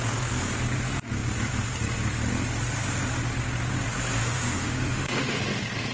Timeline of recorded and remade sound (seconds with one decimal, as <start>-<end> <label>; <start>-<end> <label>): 0.0-4.2 recorded; 4.2-5.4 remade; 5.4-5.9 recorded